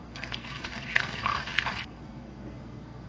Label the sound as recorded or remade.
remade